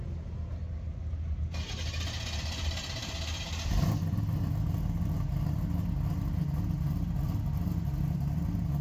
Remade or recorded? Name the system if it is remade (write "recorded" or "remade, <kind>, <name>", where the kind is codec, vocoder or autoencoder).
recorded